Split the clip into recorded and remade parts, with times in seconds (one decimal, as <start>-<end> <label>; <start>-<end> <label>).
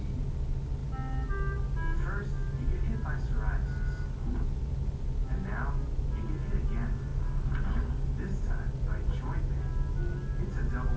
0.0-11.0 recorded